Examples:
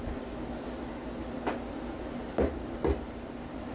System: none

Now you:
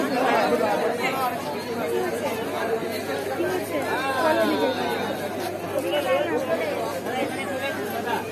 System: none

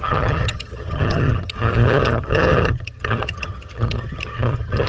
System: vocoder, HiFi-GAN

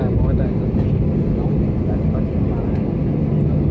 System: none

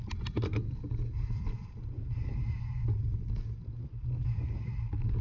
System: none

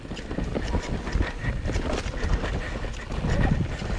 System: none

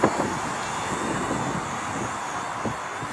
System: none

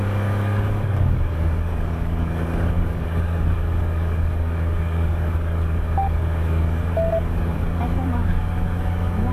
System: codec, DAC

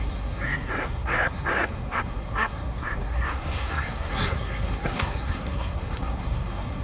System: codec, SNAC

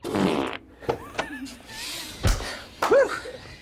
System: none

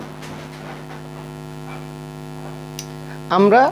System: none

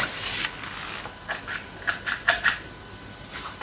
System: none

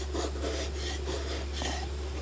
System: none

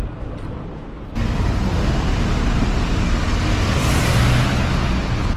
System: none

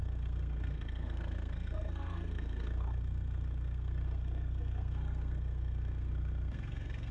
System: codec, SNAC